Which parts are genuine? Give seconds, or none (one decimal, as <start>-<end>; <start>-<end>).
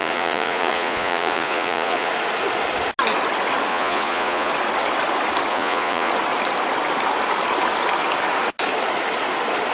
2.1-3.7; 4.5-5.5; 6.1-9.7